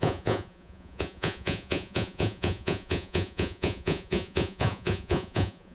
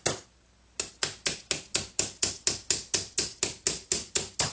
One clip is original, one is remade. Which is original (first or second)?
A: second